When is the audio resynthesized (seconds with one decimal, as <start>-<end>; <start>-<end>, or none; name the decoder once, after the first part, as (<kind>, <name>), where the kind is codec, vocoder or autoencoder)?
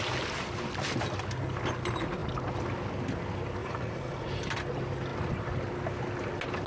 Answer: 3.6-4.3 (vocoder, Vocos)